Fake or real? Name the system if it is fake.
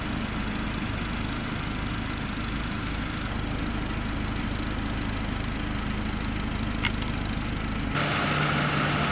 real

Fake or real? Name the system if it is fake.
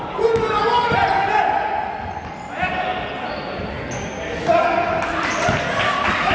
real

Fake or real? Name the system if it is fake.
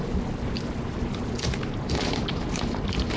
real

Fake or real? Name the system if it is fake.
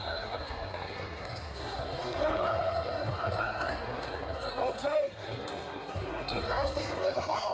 fake, codec, SNAC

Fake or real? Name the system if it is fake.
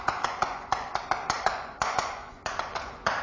fake, vocoder, Vocos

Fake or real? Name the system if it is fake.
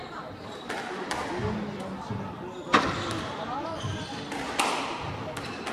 real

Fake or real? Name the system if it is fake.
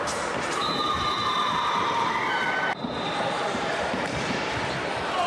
fake, vocoder, BigVGAN v2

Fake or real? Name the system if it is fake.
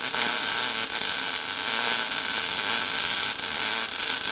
real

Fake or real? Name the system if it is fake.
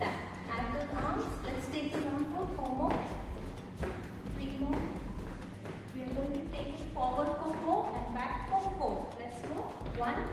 real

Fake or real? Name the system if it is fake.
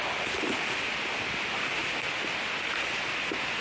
real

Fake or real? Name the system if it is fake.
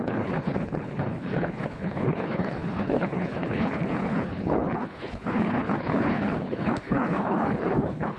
fake, codec, HILCodec